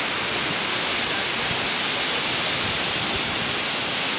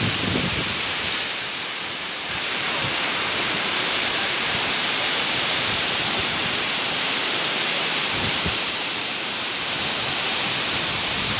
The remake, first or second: second